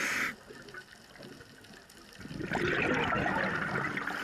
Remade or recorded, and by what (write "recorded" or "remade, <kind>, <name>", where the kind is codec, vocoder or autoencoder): recorded